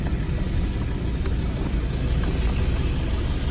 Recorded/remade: recorded